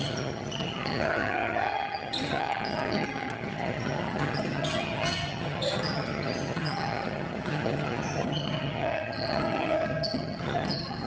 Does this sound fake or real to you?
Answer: fake